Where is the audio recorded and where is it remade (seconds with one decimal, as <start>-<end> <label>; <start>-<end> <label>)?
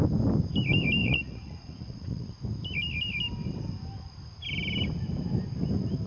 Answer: 0.0-1.0 recorded; 1.0-2.3 remade; 2.3-6.1 recorded